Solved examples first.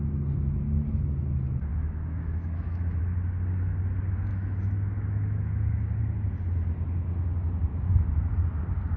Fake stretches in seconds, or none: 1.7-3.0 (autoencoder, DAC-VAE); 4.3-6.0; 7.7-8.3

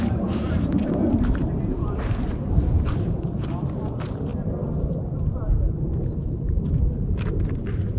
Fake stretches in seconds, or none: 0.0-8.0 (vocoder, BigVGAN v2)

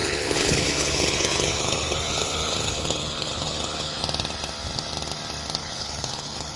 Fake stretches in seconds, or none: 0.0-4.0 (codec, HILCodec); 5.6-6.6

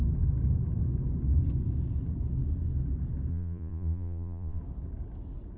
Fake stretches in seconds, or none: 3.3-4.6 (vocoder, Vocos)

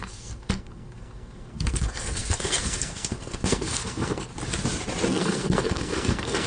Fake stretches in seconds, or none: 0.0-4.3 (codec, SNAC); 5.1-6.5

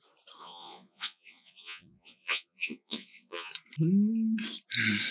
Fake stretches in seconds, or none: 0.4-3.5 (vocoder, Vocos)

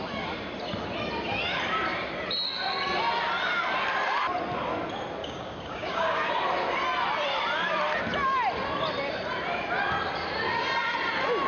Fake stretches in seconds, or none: 5.2-6.3 (codec, DAC)